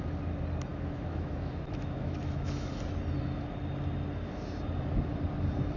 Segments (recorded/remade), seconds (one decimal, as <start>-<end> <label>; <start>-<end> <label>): 0.0-0.7 recorded; 0.7-2.7 remade; 2.7-5.8 recorded